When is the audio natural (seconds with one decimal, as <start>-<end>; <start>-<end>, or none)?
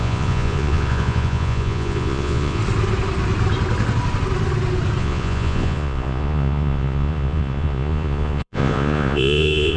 2.6-5.0